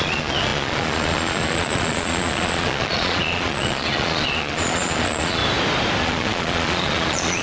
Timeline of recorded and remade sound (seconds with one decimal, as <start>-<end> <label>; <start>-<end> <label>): 0.0-5.4 remade; 5.4-6.0 recorded; 6.0-7.4 remade